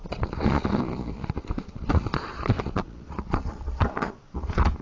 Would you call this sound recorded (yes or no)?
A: no